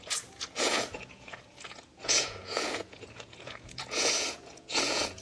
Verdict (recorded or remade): remade